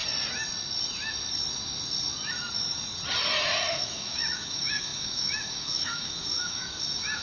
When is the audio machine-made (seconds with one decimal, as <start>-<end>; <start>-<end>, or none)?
3.7-7.2